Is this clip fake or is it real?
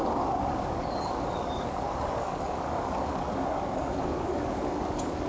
fake